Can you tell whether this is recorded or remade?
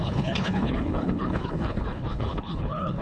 remade